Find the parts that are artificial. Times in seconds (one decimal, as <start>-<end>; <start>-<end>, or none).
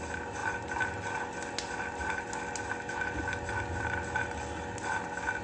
none